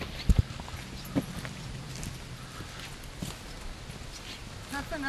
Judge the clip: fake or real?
real